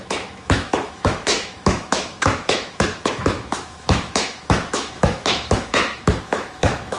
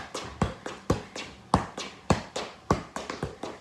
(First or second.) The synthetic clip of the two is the first